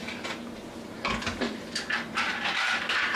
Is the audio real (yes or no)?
yes